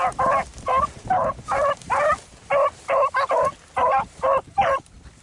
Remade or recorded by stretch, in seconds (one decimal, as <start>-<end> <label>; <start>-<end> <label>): 0.0-0.5 recorded; 0.5-2.1 remade; 2.1-3.8 recorded; 3.8-4.6 remade; 4.6-5.2 recorded